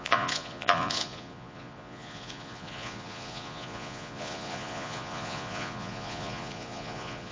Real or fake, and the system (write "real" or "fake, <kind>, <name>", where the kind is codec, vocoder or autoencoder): fake, vocoder, Vocos